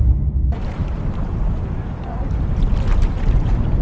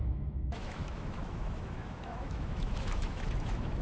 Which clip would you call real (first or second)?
first